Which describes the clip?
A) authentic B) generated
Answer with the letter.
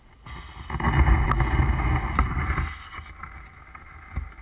A